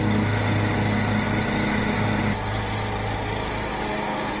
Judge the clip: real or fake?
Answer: real